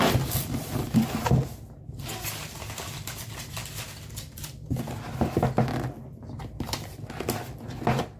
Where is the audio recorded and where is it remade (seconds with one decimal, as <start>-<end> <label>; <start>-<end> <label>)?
0.0-8.2 recorded